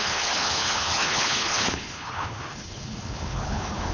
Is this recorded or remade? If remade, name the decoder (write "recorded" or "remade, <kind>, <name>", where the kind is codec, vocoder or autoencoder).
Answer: remade, codec, HILCodec